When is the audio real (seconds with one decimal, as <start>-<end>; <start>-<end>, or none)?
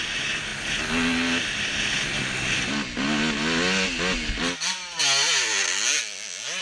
0.0-6.6